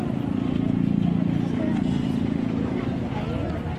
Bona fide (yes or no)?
yes